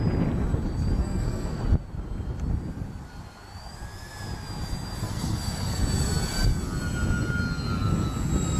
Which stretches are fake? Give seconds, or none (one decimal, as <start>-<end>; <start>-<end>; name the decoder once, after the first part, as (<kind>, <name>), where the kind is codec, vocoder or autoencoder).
1.0-1.6 (codec, SNAC); 5.0-5.8